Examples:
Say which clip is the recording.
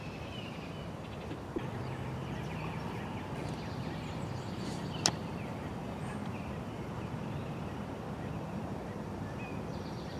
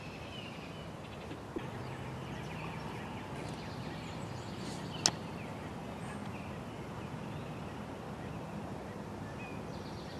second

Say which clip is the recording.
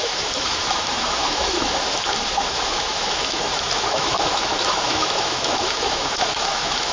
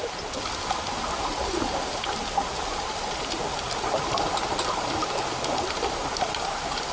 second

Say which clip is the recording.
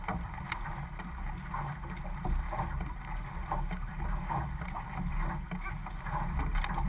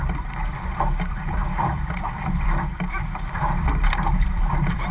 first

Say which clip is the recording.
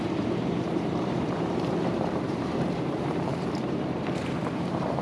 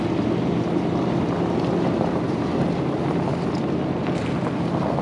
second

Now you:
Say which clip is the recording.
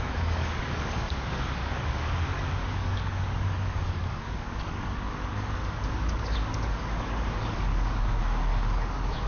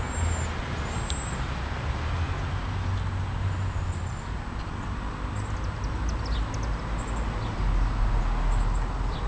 second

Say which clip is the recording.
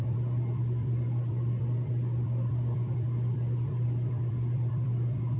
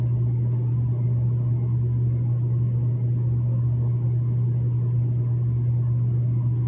second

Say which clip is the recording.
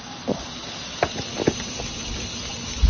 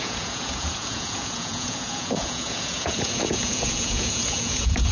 first